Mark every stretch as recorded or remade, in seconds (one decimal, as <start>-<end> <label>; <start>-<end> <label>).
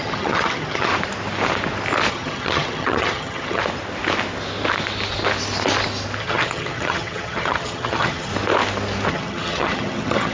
0.0-0.9 remade; 0.9-2.1 recorded; 2.1-3.6 remade; 3.6-6.2 recorded; 6.2-8.3 remade; 8.3-9.1 recorded; 9.1-10.3 remade